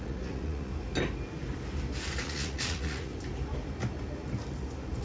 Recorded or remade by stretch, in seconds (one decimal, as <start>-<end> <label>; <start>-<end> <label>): 0.0-0.7 remade; 0.7-2.2 recorded; 2.2-3.1 remade; 3.1-5.0 recorded